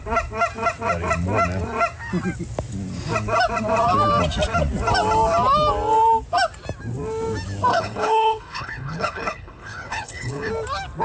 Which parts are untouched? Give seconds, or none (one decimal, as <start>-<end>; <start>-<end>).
0.0-7.7; 10.5-11.0